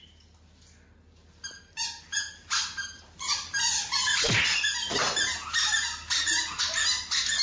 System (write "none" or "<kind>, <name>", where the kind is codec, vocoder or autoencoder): none